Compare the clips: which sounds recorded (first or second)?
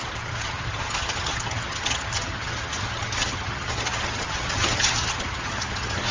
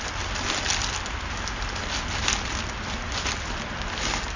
second